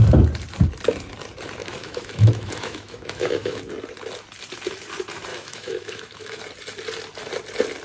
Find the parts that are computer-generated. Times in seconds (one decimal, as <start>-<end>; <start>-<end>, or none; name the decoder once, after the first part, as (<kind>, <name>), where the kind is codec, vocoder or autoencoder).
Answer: 1.6-3.7 (autoencoder, DAC-VAE); 5.3-6.4